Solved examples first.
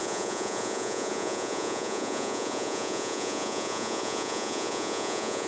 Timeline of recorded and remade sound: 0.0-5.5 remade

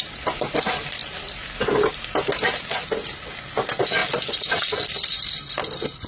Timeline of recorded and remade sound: 0.0-6.1 recorded

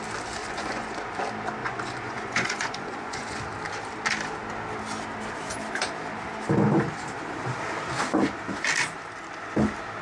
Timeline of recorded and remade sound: 0.0-0.4 recorded; 0.4-1.1 remade; 1.1-1.6 recorded; 1.6-3.4 remade; 3.4-10.0 recorded